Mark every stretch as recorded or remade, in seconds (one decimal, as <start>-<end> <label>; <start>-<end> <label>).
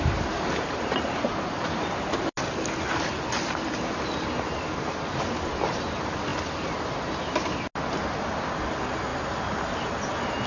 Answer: 0.0-10.5 recorded